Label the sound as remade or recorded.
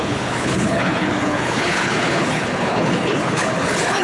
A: remade